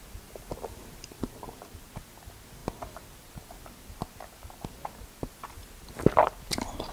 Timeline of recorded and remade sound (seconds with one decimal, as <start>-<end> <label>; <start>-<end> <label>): 0.0-6.9 recorded